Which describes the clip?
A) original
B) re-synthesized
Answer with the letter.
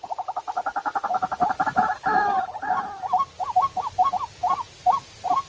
A